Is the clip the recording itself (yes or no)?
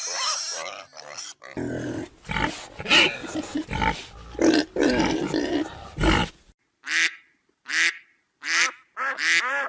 yes